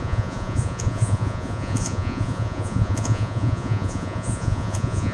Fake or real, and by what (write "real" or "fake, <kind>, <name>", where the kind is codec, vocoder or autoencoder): fake, vocoder, Vocos